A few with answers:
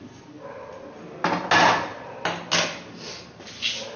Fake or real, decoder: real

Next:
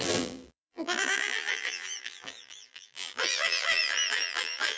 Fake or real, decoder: fake, vocoder, BigVGAN v2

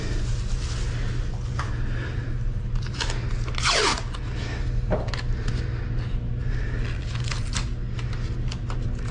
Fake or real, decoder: real